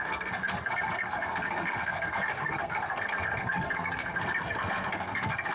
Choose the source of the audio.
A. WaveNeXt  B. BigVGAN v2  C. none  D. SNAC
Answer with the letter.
D